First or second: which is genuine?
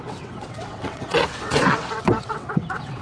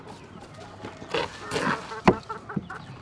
second